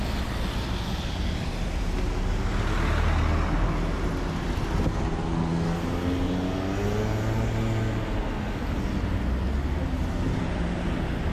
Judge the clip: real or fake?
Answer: real